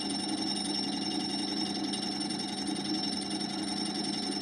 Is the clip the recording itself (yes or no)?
yes